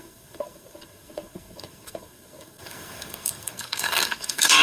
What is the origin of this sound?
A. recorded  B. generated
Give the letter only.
B